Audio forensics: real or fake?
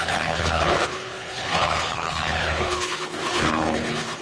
fake